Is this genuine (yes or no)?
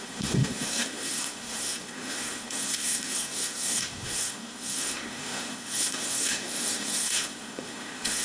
no